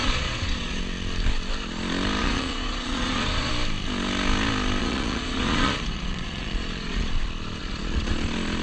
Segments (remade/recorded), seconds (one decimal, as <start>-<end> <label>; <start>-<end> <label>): 0.0-0.8 remade; 0.8-2.2 recorded; 2.2-3.5 remade; 3.5-4.8 recorded; 4.8-7.1 remade; 7.1-7.6 recorded; 7.6-8.1 remade; 8.1-8.6 recorded